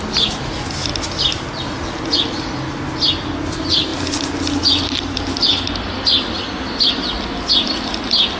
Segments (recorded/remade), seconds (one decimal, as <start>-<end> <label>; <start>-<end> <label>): 0.0-8.4 recorded